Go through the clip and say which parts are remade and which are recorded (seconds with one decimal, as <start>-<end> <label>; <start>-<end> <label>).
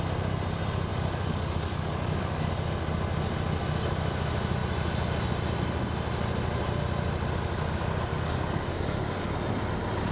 0.0-0.9 recorded; 0.9-2.5 remade; 2.5-8.1 recorded; 8.1-9.3 remade; 9.3-10.1 recorded